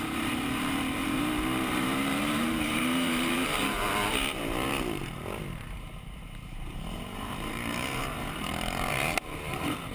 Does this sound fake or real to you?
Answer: fake